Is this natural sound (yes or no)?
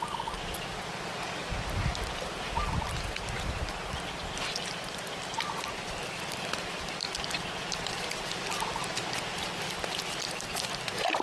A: yes